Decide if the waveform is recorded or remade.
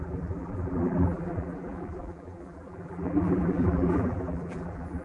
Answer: remade